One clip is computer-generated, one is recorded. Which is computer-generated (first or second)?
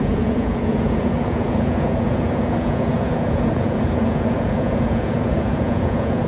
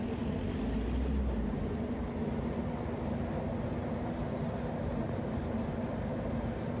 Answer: first